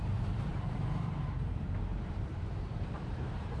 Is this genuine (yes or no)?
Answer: no